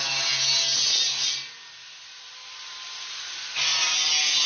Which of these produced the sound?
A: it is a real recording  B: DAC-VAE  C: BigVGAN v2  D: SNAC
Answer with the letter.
A